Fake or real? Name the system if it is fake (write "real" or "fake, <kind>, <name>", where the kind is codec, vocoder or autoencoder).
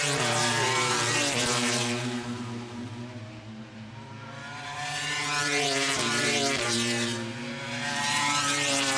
fake, vocoder, BigVGAN v2